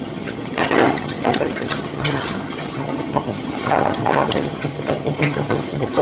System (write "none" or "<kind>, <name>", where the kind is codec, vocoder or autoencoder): vocoder, HiFi-GAN